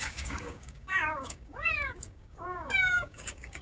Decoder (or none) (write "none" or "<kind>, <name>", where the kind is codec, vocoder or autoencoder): codec, DAC